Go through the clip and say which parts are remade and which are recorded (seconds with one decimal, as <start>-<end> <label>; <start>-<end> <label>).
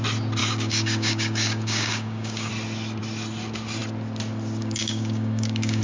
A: 0.0-0.4 recorded; 0.4-2.5 remade; 2.5-4.6 recorded; 4.6-5.8 remade